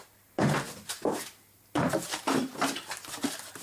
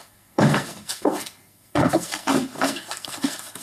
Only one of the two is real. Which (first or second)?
first